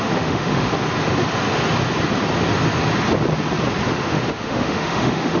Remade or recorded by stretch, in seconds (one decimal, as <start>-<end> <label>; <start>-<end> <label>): 0.0-0.7 remade; 0.7-3.9 recorded; 3.9-5.4 remade